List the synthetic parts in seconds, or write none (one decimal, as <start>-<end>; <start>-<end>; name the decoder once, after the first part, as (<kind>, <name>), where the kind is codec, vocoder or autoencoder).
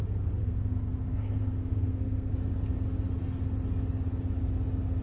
0.4-2.3 (codec, SNAC)